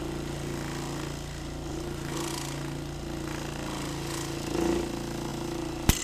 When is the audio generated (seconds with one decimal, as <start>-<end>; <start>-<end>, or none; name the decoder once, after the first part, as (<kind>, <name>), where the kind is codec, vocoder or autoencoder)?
1.7-2.3 (vocoder, BigVGAN v2); 5.3-6.0